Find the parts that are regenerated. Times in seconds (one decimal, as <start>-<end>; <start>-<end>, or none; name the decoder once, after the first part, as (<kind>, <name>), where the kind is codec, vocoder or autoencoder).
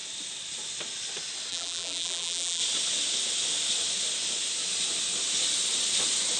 1.5-2.6 (vocoder, BigVGAN v2)